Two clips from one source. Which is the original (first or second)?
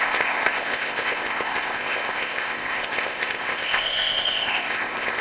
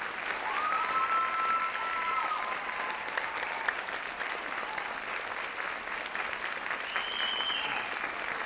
second